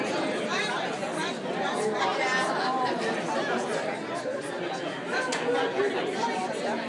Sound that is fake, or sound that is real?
real